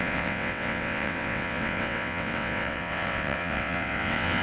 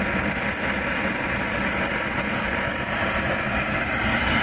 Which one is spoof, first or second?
first